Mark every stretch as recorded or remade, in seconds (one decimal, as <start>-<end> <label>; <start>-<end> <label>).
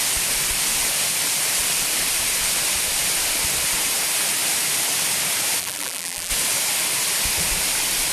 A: 0.0-5.6 recorded; 5.6-6.3 remade; 6.3-8.1 recorded